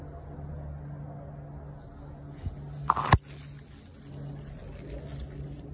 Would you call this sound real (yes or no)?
yes